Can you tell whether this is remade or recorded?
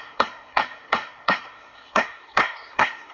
remade